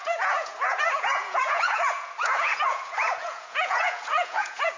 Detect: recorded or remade remade